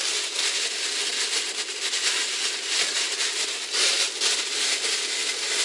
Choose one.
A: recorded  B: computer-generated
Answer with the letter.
A